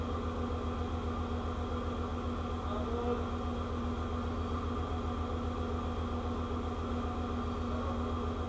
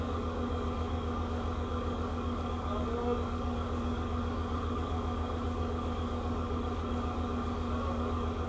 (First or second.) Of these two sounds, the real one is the first